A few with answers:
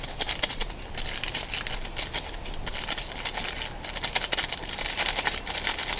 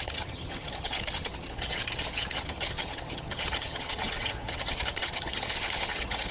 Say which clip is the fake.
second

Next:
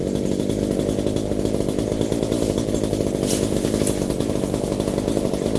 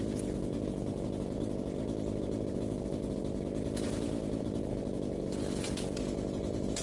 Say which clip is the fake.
second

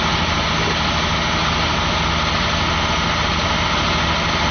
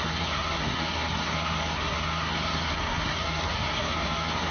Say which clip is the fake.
second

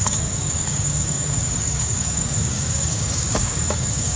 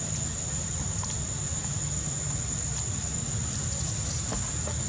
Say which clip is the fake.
first